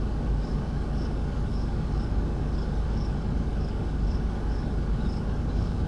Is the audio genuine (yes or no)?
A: no